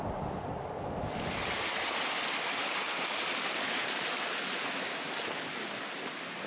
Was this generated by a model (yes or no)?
no